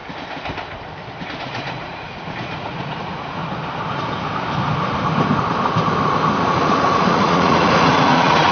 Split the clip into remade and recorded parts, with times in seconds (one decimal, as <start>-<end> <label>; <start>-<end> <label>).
0.0-1.4 recorded; 1.4-3.4 remade; 3.4-6.4 recorded; 6.4-8.5 remade

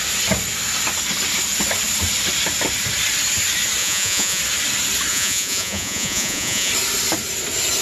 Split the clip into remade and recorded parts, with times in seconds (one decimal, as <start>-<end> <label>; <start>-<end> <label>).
0.0-3.8 recorded; 3.8-4.4 remade; 4.4-5.1 recorded; 5.1-6.7 remade; 6.7-7.8 recorded